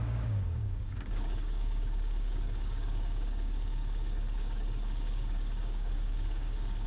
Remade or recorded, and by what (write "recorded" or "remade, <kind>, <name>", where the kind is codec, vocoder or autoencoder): remade, codec, DAC